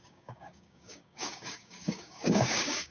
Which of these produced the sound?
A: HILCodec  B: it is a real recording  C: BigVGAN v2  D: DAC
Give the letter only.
D